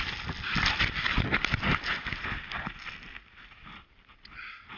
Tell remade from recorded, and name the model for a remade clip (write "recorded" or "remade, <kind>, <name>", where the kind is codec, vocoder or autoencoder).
recorded